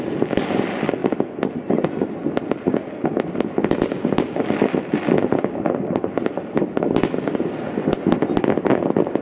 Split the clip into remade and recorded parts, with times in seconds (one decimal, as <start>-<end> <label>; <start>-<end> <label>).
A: 0.0-5.2 recorded; 5.2-6.2 remade; 6.2-9.2 recorded